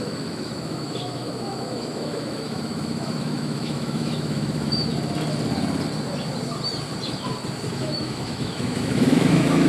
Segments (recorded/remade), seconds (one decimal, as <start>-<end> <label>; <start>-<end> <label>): 0.0-4.9 remade; 4.9-7.7 recorded; 7.7-9.7 remade